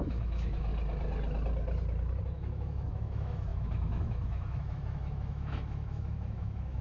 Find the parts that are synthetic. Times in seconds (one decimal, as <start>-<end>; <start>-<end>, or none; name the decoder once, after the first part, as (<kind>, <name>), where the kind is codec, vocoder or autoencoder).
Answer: 0.0-0.7 (autoencoder, DAC-VAE); 2.2-6.8